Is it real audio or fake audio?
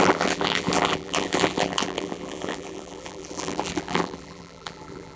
fake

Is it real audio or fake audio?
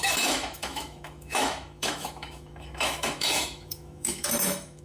fake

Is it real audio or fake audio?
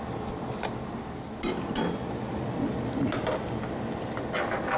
real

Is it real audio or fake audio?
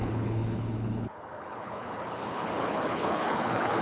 fake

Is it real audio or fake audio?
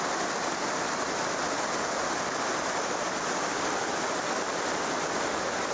real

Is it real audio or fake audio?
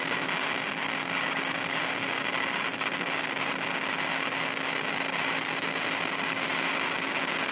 real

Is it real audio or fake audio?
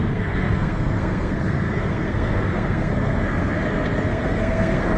fake